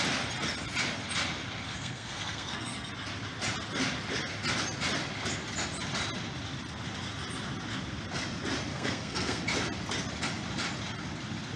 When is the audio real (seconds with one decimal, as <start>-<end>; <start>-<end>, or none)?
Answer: 0.0-1.7; 2.9-8.7; 9.4-11.6